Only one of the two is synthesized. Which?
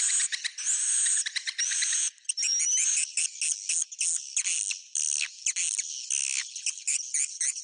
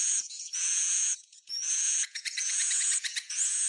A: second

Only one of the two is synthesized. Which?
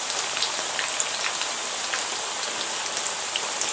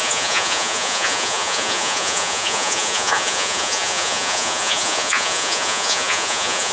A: second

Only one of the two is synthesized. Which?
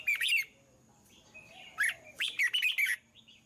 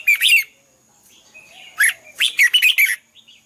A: first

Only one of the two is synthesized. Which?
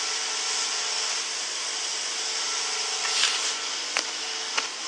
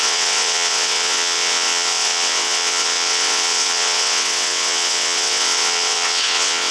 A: second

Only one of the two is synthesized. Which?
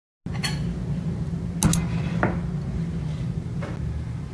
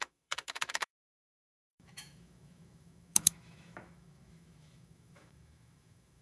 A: second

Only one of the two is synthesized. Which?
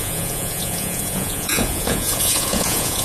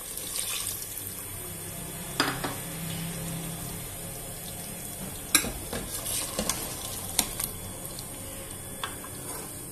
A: first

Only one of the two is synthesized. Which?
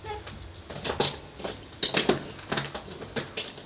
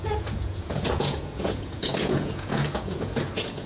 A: second